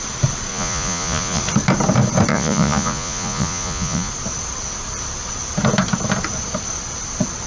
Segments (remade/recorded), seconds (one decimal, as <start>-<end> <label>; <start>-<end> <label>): 0.0-0.5 recorded; 0.5-1.4 remade; 1.4-2.3 recorded; 2.3-4.1 remade; 4.1-7.5 recorded

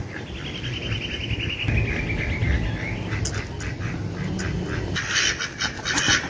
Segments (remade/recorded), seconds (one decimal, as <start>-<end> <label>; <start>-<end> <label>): 0.0-6.3 recorded

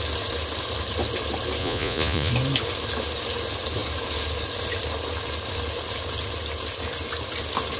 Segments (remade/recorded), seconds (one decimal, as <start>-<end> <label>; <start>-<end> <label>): 0.0-1.6 recorded; 1.6-2.3 remade; 2.3-7.8 recorded

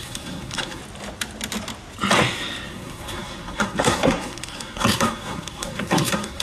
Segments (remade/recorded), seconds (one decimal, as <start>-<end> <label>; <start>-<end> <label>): 0.0-0.8 remade; 0.8-2.7 recorded; 2.7-6.4 remade

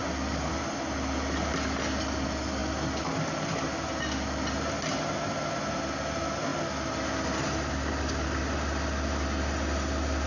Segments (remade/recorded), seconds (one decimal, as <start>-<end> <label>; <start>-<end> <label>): 0.0-10.3 recorded